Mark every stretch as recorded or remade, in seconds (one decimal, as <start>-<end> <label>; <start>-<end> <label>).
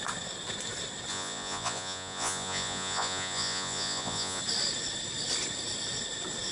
0.0-1.1 recorded; 1.1-4.4 remade; 4.4-6.5 recorded